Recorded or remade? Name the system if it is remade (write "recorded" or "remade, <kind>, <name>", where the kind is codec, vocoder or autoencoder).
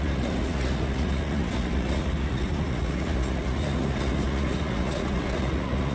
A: remade, vocoder, Vocos